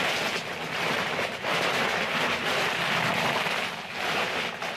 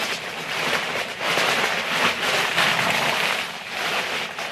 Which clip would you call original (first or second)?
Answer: first